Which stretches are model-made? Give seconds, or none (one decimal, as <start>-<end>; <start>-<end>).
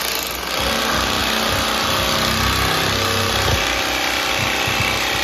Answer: none